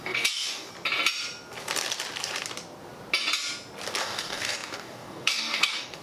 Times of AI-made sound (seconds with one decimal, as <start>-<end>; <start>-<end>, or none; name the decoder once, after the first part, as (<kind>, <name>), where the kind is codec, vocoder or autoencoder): 0.0-0.7 (codec, DAC); 4.0-6.0